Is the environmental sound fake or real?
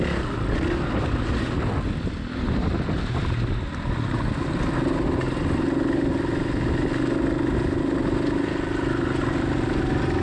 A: real